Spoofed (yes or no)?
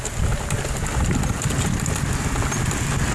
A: no